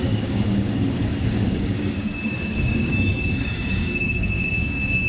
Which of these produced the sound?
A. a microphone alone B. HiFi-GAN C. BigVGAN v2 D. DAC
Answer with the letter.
D